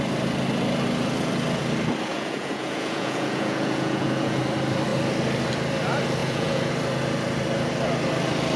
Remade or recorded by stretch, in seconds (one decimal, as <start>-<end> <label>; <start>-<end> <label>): 0.0-2.1 recorded; 2.1-4.4 remade; 4.4-6.2 recorded; 6.2-6.7 remade; 6.7-8.6 recorded